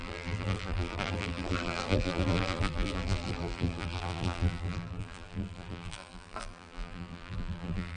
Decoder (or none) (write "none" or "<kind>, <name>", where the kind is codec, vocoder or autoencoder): vocoder, BigVGAN v2